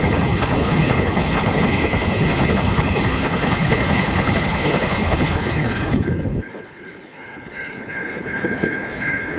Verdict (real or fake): fake